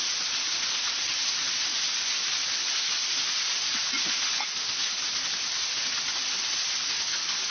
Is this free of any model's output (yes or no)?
yes